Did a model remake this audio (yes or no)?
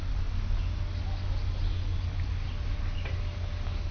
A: no